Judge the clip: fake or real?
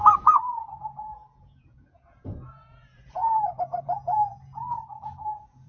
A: fake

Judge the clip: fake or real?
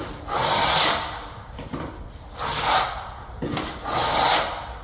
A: real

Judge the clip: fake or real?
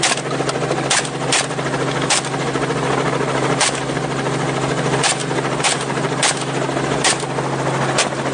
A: real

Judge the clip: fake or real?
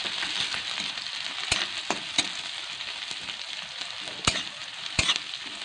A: real